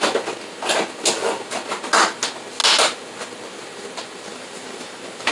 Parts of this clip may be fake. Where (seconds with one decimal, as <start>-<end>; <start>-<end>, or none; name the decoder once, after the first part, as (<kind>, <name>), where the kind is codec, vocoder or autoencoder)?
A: 4.3-5.3 (vocoder, BigVGAN v2)